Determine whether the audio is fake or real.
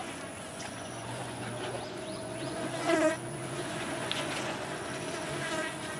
fake